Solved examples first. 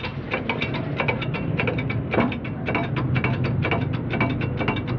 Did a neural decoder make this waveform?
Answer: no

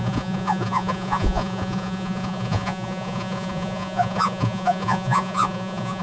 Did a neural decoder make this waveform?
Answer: yes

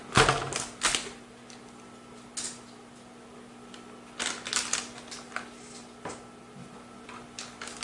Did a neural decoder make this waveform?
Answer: no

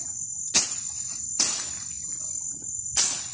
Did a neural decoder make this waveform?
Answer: no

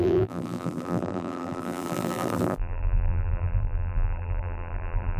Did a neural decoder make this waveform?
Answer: yes